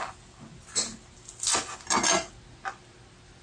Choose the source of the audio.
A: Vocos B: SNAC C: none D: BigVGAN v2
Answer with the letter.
C